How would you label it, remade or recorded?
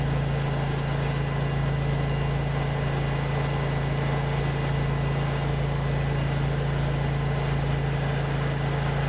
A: recorded